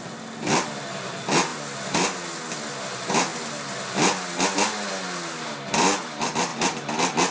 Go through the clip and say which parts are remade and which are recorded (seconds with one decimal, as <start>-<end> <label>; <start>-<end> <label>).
0.0-7.3 recorded